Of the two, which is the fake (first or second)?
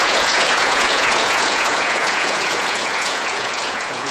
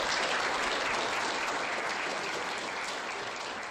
first